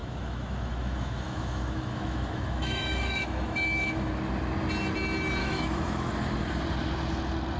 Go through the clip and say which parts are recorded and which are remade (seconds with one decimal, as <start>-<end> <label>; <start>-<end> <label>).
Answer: 0.0-4.1 remade; 4.1-5.4 recorded; 5.4-6.1 remade; 6.1-7.6 recorded